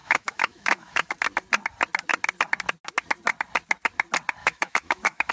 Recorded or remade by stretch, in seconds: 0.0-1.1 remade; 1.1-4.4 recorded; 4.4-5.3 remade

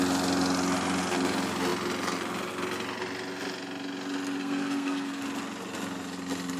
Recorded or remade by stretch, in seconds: 0.0-4.4 recorded; 4.4-5.2 remade; 5.2-6.6 recorded

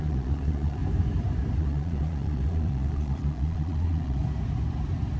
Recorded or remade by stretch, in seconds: 0.0-0.8 remade; 0.8-1.6 recorded; 1.6-4.2 remade; 4.2-5.2 recorded

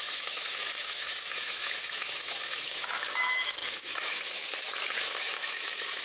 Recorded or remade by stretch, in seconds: 0.0-6.0 remade

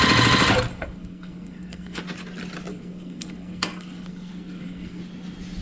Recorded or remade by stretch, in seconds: 0.0-0.7 recorded; 0.7-2.0 remade; 2.0-2.7 recorded; 2.7-5.0 remade; 5.0-5.6 recorded

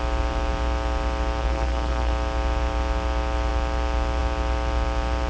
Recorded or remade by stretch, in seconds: 0.0-1.4 recorded; 1.4-2.1 remade; 2.1-5.3 recorded

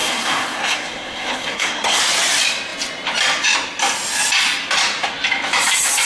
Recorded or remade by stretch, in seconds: 0.0-2.0 remade; 2.0-6.1 recorded